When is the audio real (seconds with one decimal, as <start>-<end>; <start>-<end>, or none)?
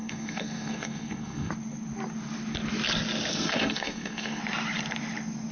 1.5-3.3; 4.4-5.5